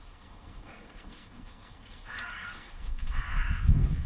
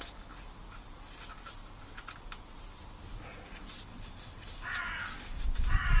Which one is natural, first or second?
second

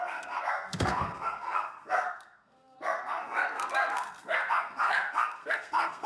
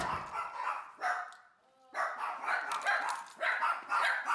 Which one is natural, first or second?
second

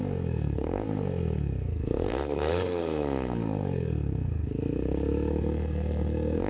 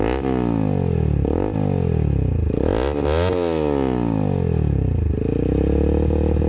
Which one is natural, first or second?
second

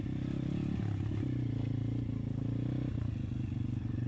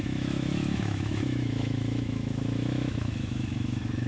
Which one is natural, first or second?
first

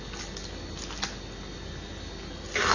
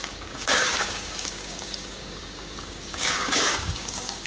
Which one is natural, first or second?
first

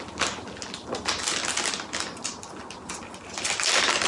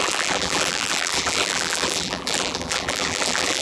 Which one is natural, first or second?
first